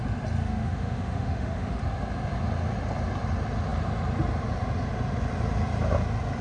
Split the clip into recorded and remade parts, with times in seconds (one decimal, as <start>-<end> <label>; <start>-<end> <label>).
0.0-0.4 recorded; 0.4-1.8 remade; 1.8-6.4 recorded